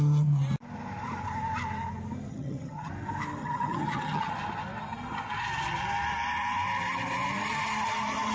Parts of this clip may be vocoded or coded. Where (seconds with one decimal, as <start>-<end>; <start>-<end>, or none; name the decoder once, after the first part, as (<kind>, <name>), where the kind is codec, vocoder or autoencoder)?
2.3-2.9 (vocoder, HiFi-GAN); 3.4-4.3